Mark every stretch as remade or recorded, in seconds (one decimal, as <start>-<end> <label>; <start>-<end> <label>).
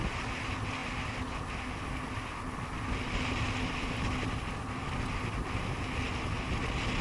0.0-7.0 recorded